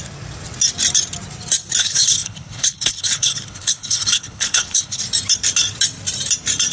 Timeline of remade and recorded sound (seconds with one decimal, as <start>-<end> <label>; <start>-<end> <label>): 0.0-1.8 recorded; 1.8-5.0 remade; 5.0-6.7 recorded